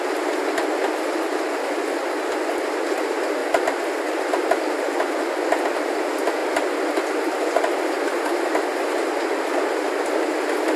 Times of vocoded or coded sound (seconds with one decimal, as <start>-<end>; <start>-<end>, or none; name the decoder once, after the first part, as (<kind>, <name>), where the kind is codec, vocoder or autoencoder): 3.4-5.8 (vocoder, BigVGAN v2); 6.4-8.6